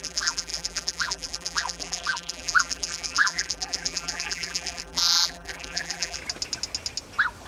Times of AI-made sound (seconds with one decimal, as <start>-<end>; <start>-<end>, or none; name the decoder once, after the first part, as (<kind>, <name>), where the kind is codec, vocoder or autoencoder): 0.0-6.2 (vocoder, BigVGAN v2)